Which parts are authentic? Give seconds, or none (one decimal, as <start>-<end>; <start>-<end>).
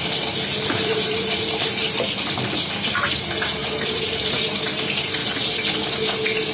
0.0-0.5; 1.8-3.6; 4.6-6.5